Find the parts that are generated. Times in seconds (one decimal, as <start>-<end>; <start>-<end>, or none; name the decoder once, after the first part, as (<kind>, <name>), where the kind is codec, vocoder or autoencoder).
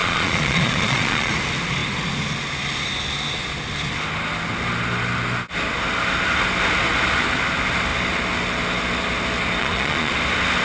0.0-1.3 (vocoder, Vocos); 9.6-10.1